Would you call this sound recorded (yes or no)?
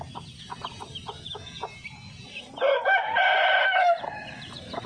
yes